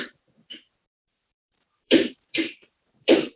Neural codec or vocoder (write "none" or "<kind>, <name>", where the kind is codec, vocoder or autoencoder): vocoder, BigVGAN v2